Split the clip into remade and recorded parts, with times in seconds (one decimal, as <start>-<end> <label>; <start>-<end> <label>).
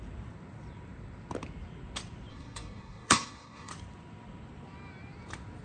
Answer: 0.0-2.3 recorded; 2.3-3.7 remade; 3.7-5.6 recorded